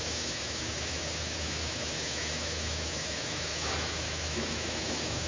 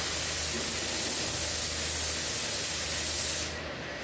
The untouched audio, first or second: second